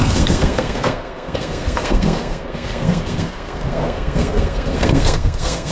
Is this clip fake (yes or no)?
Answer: yes